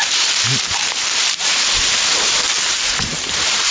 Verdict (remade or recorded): remade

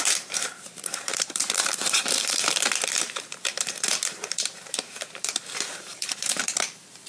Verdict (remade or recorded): remade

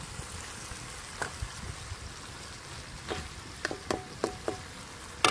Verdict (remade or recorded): recorded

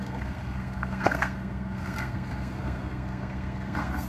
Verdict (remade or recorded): remade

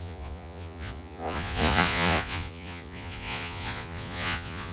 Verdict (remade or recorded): remade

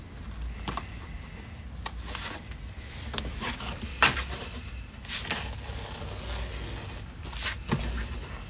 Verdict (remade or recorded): recorded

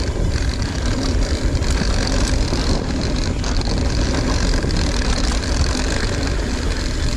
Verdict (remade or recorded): remade